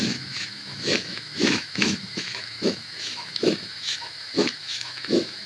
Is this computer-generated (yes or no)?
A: yes